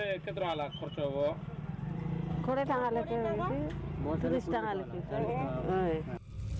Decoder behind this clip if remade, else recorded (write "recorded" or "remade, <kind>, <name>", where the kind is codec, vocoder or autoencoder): recorded